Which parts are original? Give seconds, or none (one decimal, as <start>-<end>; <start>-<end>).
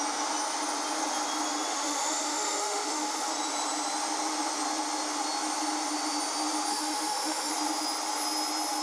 0.0-1.7; 3.3-6.7; 7.5-8.8